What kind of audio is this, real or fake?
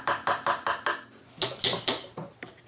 real